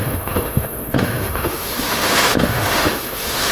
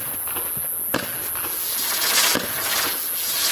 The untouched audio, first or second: second